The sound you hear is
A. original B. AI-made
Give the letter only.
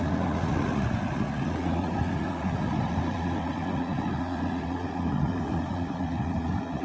B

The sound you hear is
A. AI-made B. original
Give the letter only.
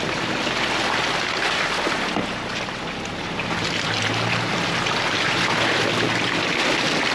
B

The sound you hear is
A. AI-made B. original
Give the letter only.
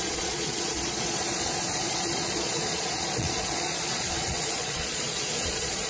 A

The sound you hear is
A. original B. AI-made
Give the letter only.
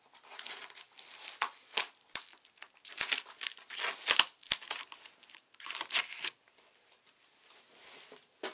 A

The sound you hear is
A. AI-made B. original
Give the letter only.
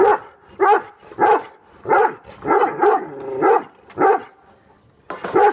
B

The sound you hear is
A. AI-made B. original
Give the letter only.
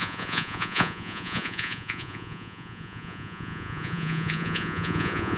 A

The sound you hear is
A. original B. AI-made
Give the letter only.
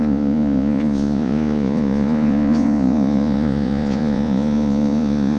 B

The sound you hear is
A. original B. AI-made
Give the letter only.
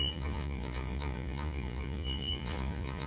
B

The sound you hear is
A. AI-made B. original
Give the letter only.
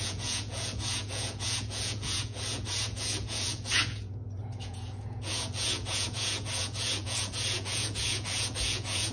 A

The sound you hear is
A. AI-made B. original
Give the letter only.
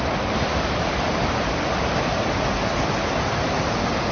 B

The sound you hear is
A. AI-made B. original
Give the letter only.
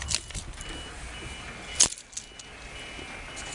B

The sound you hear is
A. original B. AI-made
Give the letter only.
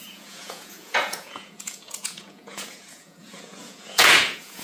B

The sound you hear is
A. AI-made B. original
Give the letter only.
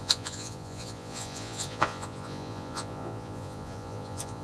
A